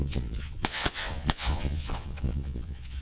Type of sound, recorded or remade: remade